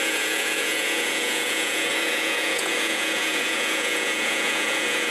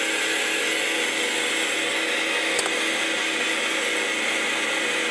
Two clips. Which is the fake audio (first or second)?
first